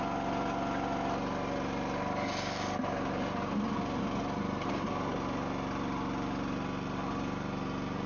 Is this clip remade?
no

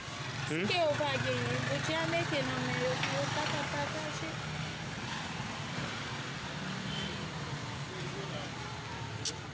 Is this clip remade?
no